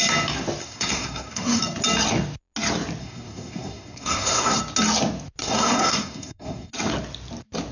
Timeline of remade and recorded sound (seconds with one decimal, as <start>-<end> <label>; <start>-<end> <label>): 0.0-0.6 recorded; 0.6-1.6 remade; 1.6-3.0 recorded; 3.0-4.6 remade; 4.6-5.4 recorded; 5.4-6.7 remade; 6.7-7.7 recorded